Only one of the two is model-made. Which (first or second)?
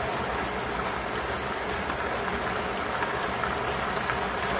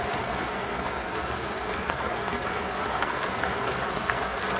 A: second